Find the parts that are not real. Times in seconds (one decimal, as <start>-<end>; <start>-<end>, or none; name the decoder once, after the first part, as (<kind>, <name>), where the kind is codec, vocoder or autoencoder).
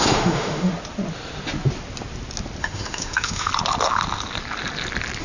0.0-0.7 (autoencoder, DAC-VAE); 2.6-3.5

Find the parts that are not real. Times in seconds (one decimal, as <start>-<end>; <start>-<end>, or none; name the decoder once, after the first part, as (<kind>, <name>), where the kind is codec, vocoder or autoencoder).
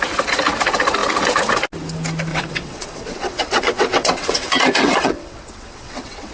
2.3-6.3 (vocoder, WaveNeXt)